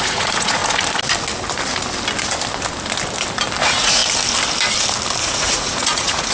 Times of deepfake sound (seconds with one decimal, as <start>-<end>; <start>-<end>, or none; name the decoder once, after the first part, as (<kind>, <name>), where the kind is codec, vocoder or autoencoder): 0.0-0.6 (vocoder, Vocos); 3.6-4.0; 5.2-6.3